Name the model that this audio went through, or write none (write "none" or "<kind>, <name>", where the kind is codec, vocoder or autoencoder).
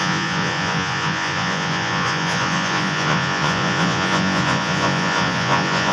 vocoder, Vocos